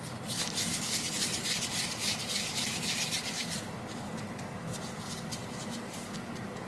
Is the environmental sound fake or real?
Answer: real